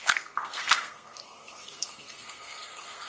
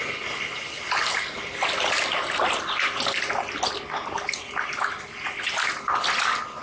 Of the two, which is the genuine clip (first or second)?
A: second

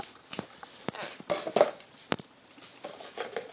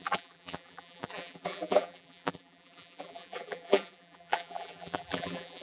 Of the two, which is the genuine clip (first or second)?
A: first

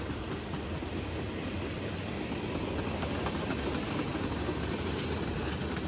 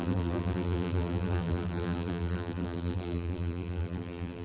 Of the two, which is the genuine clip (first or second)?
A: first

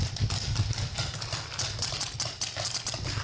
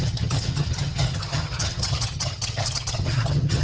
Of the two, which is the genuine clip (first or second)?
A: first